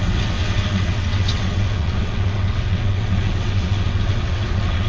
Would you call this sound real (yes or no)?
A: no